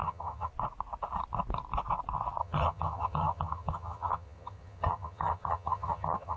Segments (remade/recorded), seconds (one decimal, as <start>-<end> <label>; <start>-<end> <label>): 0.0-0.5 remade; 0.5-2.4 recorded; 2.4-6.4 remade